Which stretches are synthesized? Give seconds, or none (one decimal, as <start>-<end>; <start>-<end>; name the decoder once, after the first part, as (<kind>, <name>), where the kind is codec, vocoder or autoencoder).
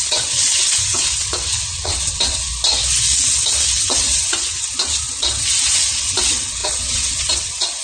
0.0-2.5 (vocoder, WaveNeXt); 3.7-4.7; 5.2-7.8